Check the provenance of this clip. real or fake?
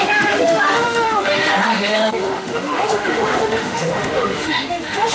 fake